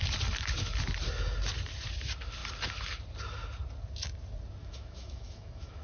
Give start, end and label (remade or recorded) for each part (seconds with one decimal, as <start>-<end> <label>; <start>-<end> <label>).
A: 0.0-4.6 recorded; 4.6-5.8 remade